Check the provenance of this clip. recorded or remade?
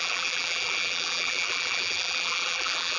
remade